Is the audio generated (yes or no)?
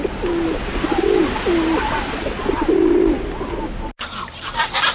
no